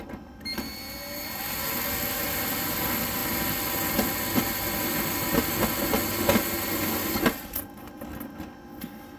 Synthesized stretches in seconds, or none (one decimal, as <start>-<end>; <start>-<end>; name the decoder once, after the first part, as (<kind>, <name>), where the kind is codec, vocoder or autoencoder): none